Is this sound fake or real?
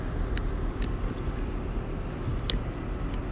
real